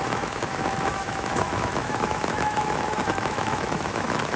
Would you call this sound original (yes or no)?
no